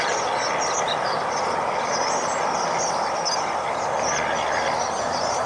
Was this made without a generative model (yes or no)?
yes